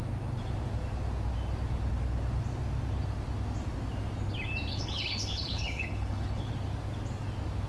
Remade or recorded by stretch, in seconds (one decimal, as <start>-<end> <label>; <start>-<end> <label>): 0.0-4.7 recorded; 4.7-6.5 remade; 6.5-7.7 recorded